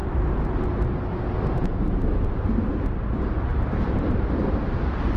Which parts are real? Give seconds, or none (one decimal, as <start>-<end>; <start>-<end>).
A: 0.0-3.5; 4.8-5.2